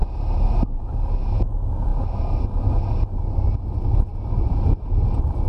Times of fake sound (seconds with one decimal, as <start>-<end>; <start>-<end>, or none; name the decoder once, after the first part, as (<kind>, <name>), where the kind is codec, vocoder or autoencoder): none